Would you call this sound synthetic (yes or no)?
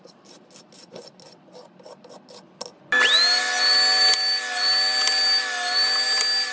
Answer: no